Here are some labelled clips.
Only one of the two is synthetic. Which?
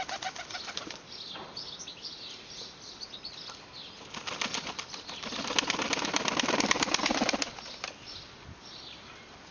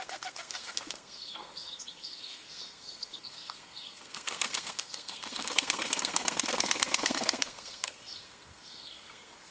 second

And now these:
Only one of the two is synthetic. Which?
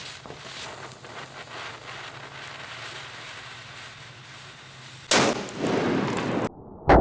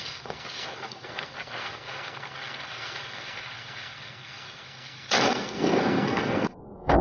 second